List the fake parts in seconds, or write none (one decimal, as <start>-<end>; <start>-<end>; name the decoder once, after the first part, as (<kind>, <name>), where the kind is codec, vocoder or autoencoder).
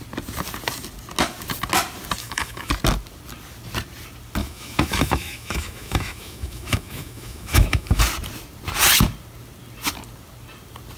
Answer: 2.2-2.7 (autoencoder, DAC-VAE); 4.4-8.0